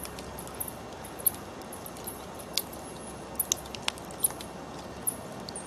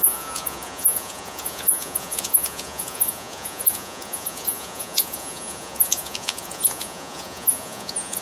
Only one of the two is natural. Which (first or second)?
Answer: first